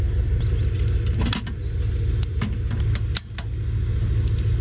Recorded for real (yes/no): yes